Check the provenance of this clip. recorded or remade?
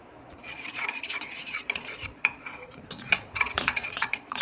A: remade